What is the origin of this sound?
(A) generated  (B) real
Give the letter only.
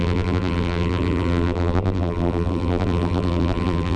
A